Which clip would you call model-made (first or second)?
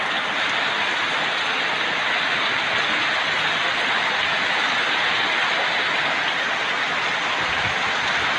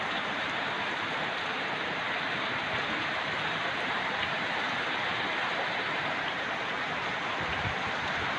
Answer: second